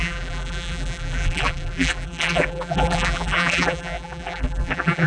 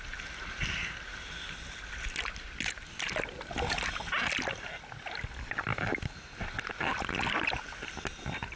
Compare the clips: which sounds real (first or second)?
second